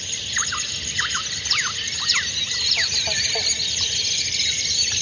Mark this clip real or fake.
real